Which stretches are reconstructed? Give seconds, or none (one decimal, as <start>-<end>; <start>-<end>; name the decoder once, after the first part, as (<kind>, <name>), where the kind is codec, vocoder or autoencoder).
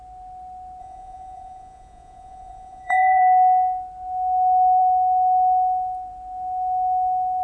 0.8-3.2 (vocoder, Vocos)